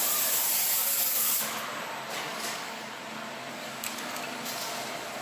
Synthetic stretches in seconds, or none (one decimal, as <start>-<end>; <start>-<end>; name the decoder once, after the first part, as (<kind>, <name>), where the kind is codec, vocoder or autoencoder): 0.7-1.4 (codec, DAC); 2.3-3.0; 3.5-4.1